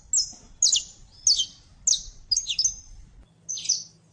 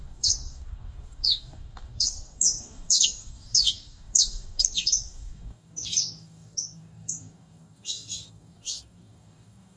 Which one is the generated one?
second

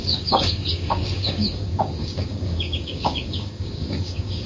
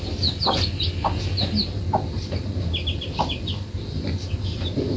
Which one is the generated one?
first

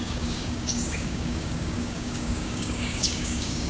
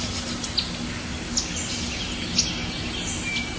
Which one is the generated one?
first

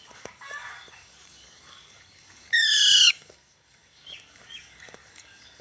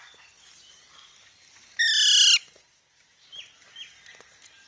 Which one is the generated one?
first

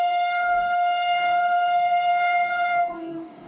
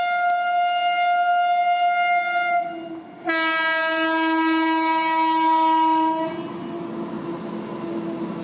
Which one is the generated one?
first